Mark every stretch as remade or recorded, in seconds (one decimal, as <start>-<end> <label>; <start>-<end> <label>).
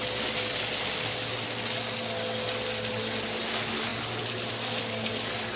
0.0-5.6 recorded